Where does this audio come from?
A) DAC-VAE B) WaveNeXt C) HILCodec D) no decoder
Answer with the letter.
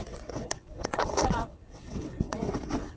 B